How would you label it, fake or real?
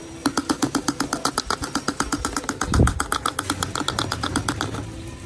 real